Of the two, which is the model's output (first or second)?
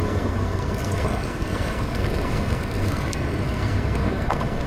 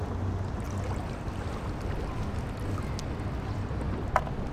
first